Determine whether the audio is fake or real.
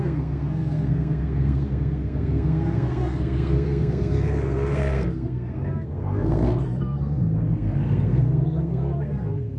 fake